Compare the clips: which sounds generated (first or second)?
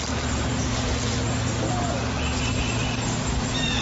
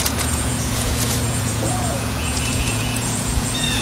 second